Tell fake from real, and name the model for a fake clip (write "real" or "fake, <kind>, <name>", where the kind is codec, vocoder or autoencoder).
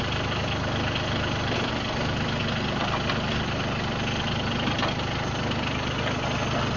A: real